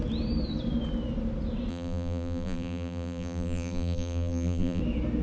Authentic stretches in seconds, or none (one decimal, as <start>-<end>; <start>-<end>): 0.0-1.7; 4.8-5.2